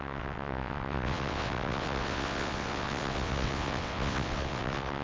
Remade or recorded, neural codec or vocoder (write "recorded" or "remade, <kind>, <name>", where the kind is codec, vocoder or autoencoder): remade, vocoder, WaveNeXt